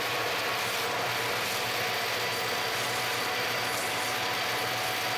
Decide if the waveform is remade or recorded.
recorded